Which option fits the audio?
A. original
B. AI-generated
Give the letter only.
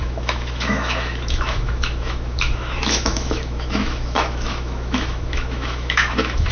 B